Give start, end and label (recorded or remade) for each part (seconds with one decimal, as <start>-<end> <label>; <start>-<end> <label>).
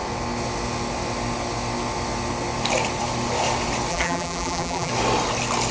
0.0-3.9 recorded; 3.9-4.9 remade; 4.9-5.7 recorded